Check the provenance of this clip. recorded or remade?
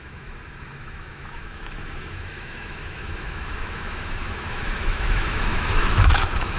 remade